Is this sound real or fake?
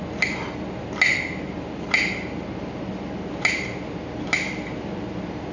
real